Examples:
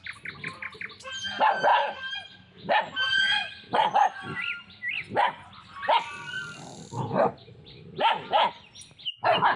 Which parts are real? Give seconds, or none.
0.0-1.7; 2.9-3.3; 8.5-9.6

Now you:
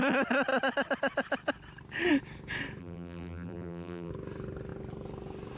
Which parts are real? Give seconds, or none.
0.0-2.8; 4.1-5.6

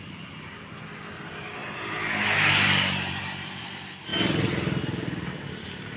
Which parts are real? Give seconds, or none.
1.6-2.5; 4.1-4.8